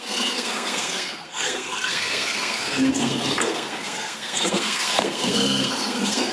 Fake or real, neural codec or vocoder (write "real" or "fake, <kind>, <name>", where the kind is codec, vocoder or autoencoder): fake, codec, SNAC